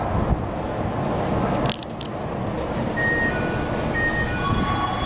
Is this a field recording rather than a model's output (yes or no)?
yes